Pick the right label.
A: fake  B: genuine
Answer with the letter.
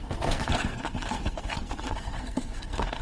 A